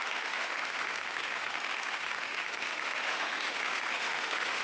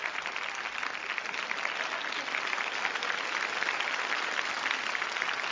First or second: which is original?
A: second